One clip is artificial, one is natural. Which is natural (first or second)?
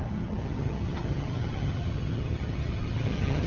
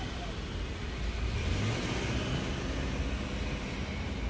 second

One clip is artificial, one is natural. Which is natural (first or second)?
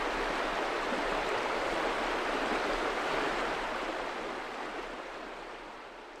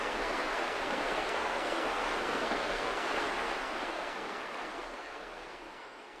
first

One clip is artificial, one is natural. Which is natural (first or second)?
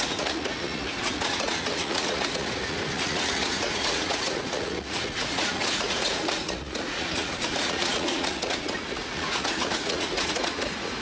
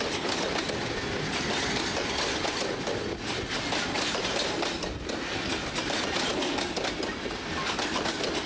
second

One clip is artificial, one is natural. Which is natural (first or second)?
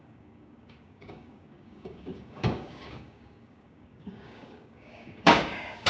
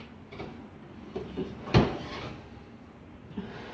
second